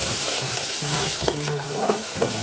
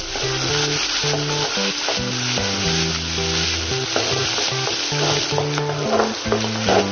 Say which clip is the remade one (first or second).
first